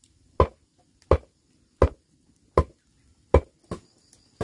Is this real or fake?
real